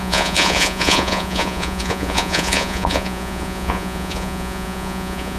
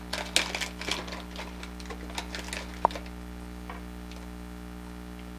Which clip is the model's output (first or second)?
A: first